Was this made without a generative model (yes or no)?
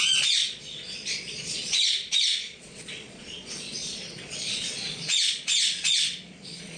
no